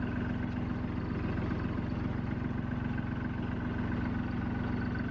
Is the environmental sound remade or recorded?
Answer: recorded